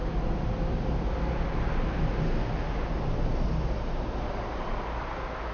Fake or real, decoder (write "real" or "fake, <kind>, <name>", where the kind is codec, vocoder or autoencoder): real